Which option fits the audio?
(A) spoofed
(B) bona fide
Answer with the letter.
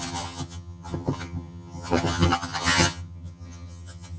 A